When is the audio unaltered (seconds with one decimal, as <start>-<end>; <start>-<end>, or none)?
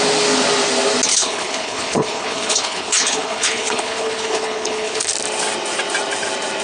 0.0-1.1; 5.1-6.6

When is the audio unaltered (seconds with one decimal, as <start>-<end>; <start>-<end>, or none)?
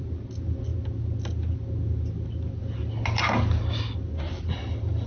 0.0-5.1